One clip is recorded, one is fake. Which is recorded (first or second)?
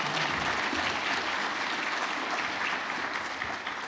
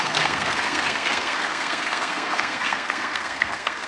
first